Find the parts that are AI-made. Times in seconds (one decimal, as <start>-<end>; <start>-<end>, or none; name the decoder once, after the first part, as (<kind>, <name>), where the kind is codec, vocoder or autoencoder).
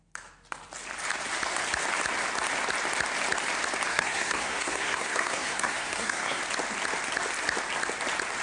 3.9-6.4 (codec, SNAC)